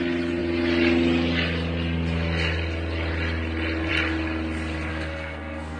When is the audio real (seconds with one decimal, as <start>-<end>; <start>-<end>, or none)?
0.0-4.9